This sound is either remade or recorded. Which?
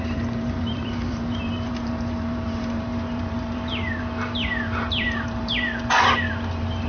remade